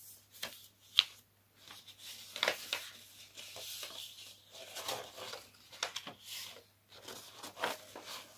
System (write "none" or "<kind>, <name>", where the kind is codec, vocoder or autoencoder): none